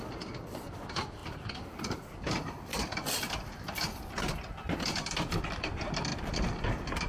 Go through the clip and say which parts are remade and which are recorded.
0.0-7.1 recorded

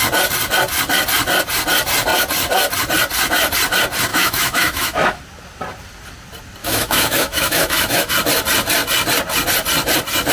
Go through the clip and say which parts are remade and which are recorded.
0.0-4.1 recorded; 4.1-5.2 remade; 5.2-6.6 recorded; 6.6-8.1 remade; 8.1-10.3 recorded

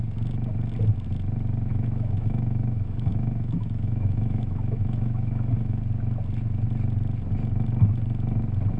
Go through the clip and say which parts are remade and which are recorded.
0.0-1.7 recorded; 1.7-5.8 remade; 5.8-8.8 recorded